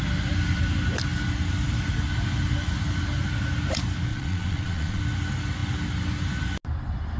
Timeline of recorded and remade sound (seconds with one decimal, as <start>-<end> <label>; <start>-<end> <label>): 0.0-4.1 recorded; 4.1-5.0 remade; 5.0-7.2 recorded